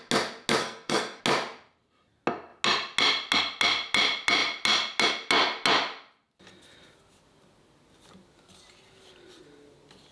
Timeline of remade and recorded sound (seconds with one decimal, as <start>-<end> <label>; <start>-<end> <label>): 0.0-0.6 recorded; 0.6-1.2 remade; 1.2-10.1 recorded